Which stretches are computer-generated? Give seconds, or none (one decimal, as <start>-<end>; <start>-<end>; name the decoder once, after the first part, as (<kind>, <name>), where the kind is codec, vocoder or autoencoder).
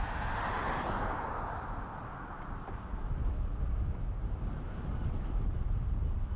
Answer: none